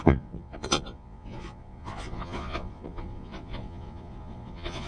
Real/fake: fake